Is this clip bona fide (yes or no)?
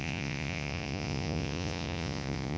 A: no